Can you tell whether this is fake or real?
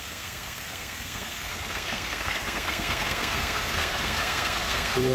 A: fake